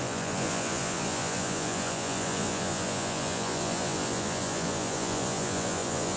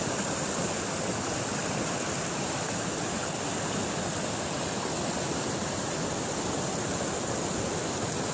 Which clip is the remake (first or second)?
first